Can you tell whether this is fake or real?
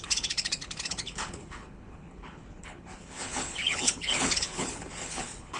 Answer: fake